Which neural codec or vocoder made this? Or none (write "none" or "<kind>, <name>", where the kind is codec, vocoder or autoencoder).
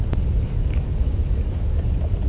none